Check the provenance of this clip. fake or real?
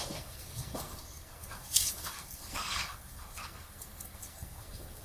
fake